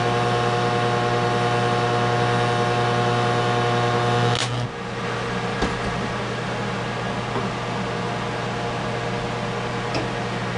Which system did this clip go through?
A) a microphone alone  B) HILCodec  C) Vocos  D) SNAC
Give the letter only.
A